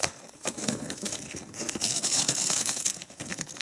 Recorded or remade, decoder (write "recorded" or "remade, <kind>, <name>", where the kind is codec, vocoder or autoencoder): remade, codec, SNAC